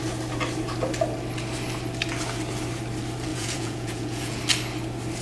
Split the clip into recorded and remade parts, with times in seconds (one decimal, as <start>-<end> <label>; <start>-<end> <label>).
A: 0.0-3.3 recorded; 3.3-4.4 remade; 4.4-5.2 recorded